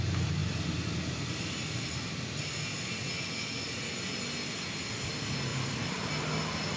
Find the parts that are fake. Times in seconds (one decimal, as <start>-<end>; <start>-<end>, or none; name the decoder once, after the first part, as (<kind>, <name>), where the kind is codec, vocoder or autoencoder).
0.4-3.7 (vocoder, BigVGAN v2); 5.5-6.1